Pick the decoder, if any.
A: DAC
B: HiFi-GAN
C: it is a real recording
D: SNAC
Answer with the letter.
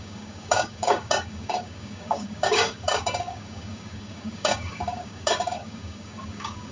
A